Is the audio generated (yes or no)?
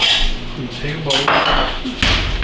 no